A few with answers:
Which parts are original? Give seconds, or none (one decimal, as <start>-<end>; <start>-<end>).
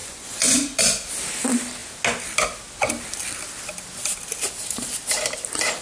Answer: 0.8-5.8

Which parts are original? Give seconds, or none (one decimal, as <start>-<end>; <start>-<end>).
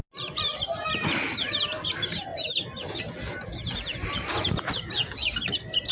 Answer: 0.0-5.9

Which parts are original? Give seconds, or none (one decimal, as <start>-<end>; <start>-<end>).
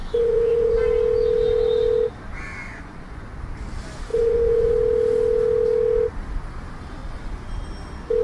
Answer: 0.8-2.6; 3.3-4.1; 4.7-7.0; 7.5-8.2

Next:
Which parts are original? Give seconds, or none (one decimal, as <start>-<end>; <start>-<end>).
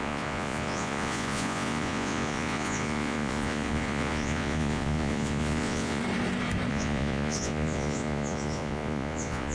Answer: 6.0-6.7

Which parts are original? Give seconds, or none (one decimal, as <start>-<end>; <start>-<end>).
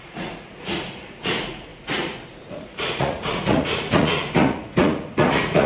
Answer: none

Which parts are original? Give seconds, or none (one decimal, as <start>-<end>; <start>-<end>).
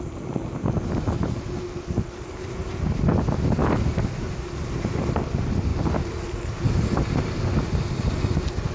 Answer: 0.0-8.7